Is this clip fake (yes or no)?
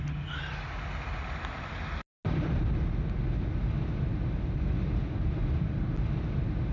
no